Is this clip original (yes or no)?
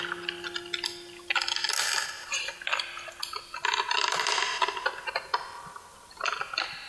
yes